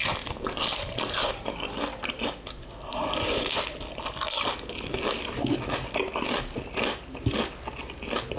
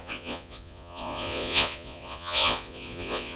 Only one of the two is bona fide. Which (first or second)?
first